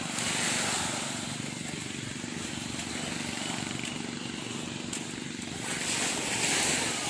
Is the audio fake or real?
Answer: real